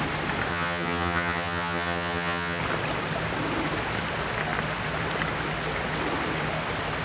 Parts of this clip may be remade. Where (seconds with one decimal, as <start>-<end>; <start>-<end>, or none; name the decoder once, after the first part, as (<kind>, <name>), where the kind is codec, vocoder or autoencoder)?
0.5-2.6 (vocoder, HiFi-GAN)